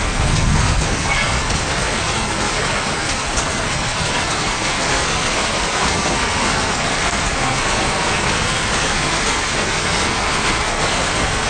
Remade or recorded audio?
remade